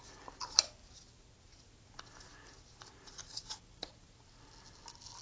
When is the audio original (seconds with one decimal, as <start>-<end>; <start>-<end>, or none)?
0.0-5.2